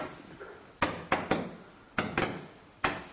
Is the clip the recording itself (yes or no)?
yes